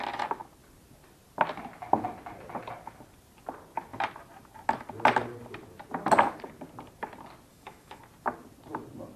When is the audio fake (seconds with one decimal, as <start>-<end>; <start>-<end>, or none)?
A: 7.5-8.0